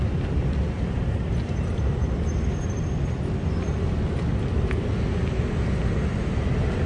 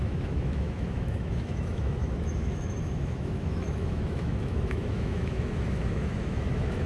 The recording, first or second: first